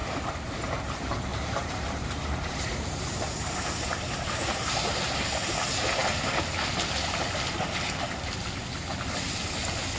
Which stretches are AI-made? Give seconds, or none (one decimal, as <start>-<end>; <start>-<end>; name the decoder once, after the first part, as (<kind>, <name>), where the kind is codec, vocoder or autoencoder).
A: 0.0-0.7 (vocoder, BigVGAN v2); 1.3-5.1